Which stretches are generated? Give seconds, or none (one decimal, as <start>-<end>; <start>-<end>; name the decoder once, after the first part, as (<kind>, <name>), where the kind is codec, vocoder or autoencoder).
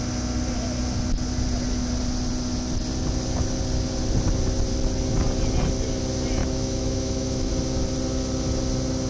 6.4-7.5 (autoencoder, DAC-VAE)